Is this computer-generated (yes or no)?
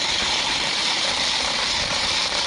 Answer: yes